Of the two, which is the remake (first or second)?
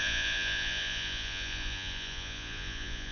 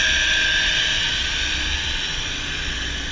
first